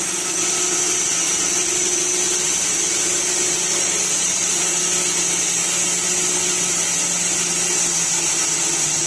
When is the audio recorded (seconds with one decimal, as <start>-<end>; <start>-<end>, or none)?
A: 0.0-3.7; 4.5-9.1